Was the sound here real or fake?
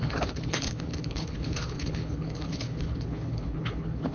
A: fake